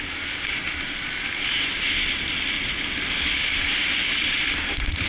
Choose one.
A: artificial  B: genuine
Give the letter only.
B